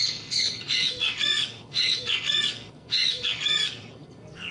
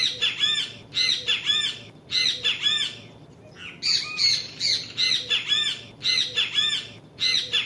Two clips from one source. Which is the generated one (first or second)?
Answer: first